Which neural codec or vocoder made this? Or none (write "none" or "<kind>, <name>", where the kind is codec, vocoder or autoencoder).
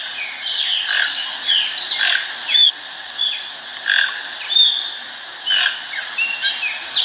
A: none